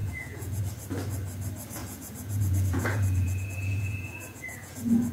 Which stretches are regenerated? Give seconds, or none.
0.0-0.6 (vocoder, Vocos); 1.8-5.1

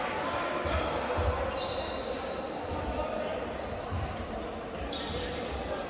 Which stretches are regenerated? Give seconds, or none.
none

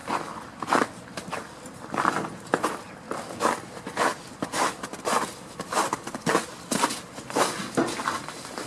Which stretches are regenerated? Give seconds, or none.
none

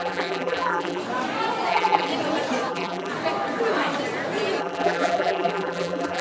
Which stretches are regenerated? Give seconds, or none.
0.0-1.0 (vocoder, BigVGAN v2); 1.7-2.1; 2.7-3.1; 4.6-6.2

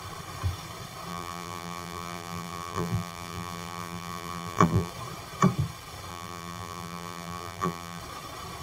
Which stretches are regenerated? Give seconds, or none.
1.1-4.9 (vocoder, BigVGAN v2); 6.1-8.0

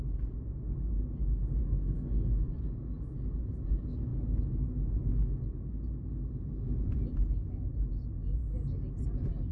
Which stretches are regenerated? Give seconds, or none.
1.6-2.5 (codec, SNAC)